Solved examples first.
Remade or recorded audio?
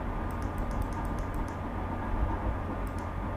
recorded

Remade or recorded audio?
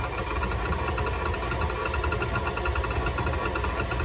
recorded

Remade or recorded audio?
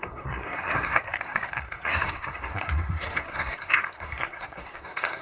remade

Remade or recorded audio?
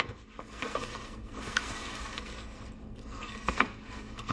remade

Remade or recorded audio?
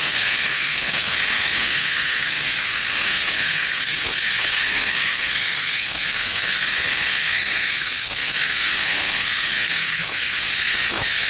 remade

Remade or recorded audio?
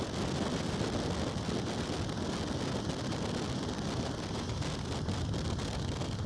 recorded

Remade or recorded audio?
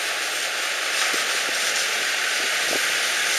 recorded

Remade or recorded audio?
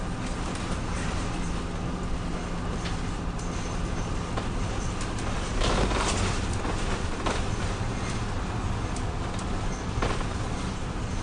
recorded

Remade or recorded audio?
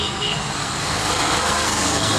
remade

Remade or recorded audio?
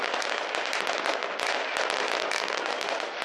recorded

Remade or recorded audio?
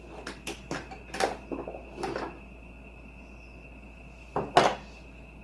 recorded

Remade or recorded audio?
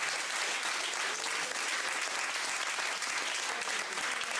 recorded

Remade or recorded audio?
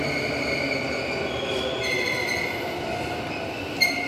recorded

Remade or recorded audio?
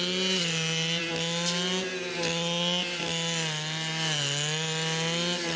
recorded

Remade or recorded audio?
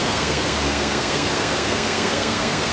remade